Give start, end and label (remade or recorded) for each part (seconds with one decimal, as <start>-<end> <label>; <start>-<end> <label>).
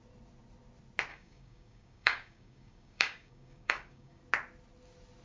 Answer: 0.0-1.1 recorded; 1.1-4.2 remade; 4.2-5.2 recorded